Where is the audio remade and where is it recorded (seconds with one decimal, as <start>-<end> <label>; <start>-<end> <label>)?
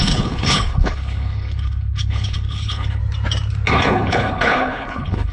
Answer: 0.0-3.0 remade; 3.0-3.7 recorded; 3.7-5.3 remade